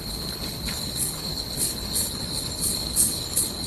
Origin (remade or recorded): remade